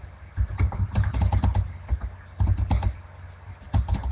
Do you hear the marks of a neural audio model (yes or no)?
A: no